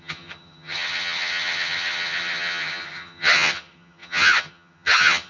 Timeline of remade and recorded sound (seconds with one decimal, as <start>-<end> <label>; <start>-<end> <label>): 0.0-5.3 remade